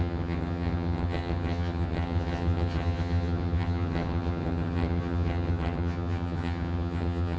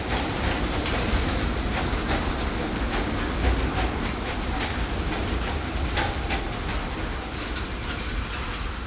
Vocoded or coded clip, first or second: first